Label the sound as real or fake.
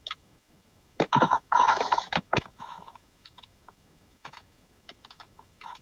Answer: fake